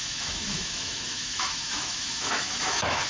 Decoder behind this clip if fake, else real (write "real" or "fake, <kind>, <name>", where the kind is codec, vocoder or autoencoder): fake, autoencoder, DAC-VAE